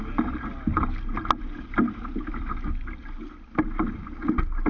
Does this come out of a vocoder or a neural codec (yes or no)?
no